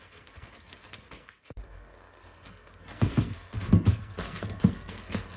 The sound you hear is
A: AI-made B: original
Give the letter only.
A